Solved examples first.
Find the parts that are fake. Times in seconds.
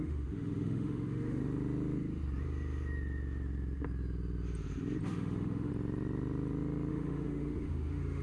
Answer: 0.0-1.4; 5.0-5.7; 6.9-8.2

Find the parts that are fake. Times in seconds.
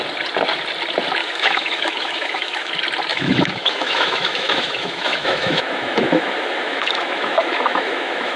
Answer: 1.2-2.7; 3.1-8.4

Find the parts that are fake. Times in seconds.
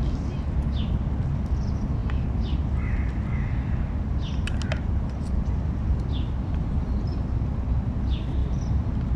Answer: none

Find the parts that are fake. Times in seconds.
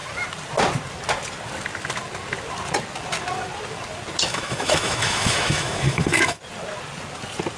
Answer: 4.3-6.4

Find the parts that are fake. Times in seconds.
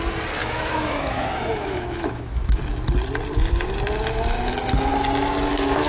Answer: 0.4-2.6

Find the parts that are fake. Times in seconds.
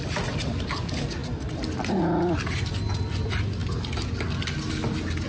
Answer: none